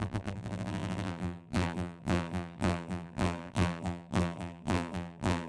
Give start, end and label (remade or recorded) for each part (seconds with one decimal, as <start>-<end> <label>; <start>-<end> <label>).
0.0-5.5 remade